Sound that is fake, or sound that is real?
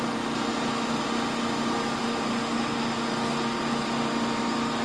real